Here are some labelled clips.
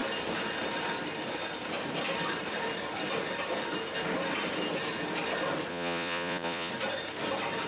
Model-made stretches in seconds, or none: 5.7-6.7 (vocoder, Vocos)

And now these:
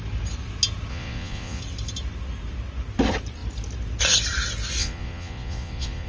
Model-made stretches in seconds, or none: 0.9-1.6 (vocoder, Vocos); 4.8-6.1

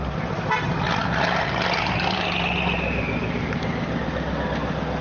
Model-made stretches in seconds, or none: none

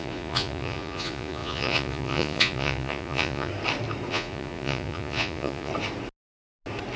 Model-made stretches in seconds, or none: 0.0-3.5 (vocoder, Vocos); 4.1-5.7